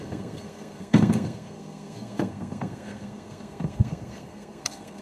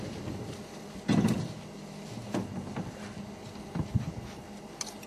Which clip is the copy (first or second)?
first